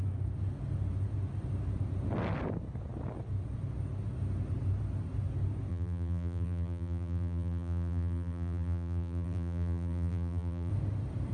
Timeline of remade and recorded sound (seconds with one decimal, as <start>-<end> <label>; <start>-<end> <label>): 0.0-5.7 recorded; 5.7-10.7 remade; 10.7-11.3 recorded